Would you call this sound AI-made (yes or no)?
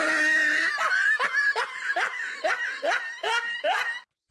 no